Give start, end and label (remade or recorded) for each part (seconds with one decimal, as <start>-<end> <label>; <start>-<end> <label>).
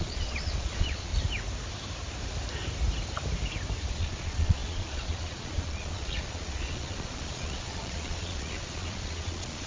0.0-1.1 remade; 1.1-3.9 recorded; 3.9-9.7 remade